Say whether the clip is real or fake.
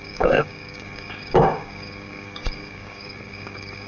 fake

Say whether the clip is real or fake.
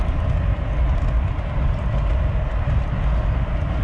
real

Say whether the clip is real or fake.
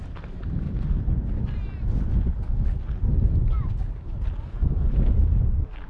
real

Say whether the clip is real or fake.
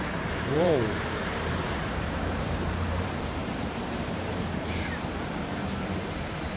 fake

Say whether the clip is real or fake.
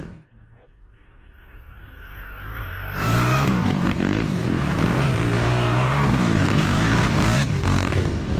fake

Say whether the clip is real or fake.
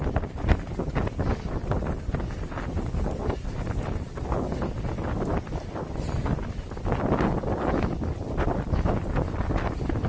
real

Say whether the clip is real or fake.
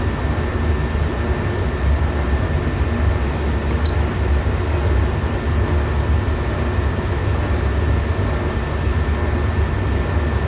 real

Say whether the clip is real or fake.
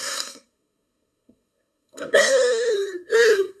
fake